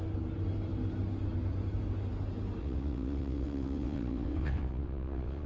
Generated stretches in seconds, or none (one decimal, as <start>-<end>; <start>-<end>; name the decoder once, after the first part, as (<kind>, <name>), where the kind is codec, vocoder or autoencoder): 2.6-5.5 (vocoder, WaveNeXt)

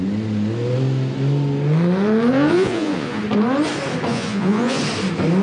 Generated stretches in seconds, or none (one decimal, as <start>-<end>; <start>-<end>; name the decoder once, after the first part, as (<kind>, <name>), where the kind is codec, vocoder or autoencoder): 2.3-3.2 (vocoder, Vocos); 4.1-4.8

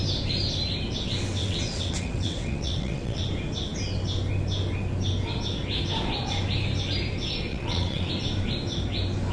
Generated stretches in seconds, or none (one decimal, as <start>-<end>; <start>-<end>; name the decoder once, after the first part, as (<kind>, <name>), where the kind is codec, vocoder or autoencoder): 1.4-3.2 (vocoder, WaveNeXt); 7.5-8.1

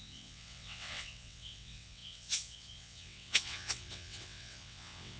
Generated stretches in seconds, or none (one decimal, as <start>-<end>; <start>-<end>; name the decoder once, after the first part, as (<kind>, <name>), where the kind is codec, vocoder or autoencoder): 0.0-5.2 (vocoder, WaveNeXt)

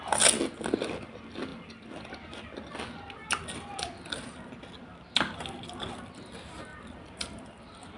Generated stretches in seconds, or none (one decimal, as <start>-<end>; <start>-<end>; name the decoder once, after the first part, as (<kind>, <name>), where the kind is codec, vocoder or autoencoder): 1.5-2.1 (vocoder, BigVGAN v2); 6.7-7.6